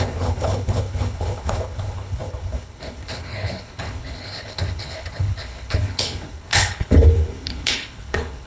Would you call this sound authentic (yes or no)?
no